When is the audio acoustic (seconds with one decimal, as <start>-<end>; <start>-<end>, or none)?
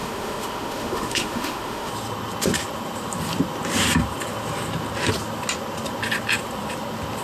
1.9-7.2